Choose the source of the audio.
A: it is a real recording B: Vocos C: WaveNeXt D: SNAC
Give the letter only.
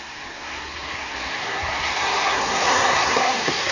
D